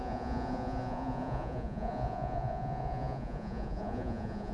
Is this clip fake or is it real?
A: fake